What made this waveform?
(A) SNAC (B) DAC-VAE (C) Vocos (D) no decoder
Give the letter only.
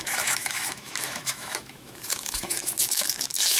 B